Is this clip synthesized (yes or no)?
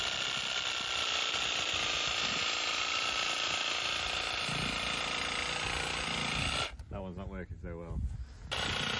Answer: no